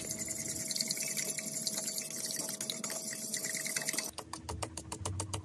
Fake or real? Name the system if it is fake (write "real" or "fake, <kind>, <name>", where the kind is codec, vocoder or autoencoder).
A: real